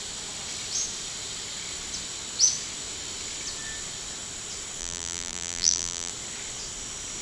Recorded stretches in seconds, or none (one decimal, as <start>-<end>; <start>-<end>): 0.0-4.8; 6.1-7.2